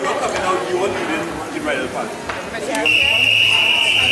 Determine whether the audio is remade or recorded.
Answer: recorded